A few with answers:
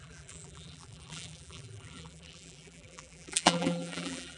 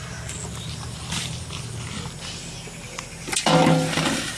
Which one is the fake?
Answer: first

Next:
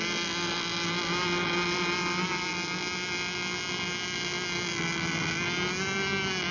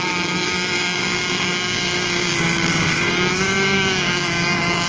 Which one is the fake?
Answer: second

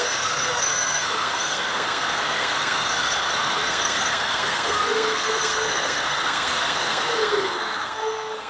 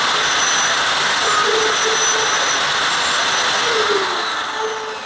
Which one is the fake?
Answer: first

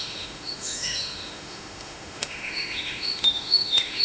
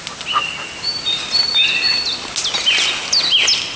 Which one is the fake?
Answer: first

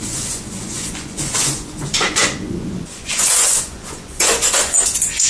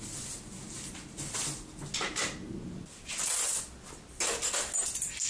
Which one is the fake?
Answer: first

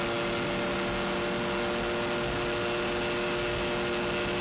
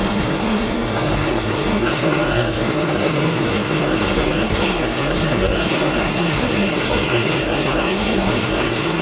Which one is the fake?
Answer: second